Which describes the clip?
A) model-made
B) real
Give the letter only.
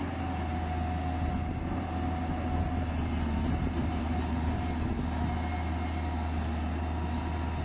B